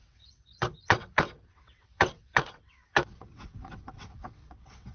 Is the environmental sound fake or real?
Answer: fake